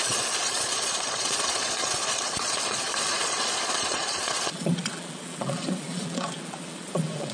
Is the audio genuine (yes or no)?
no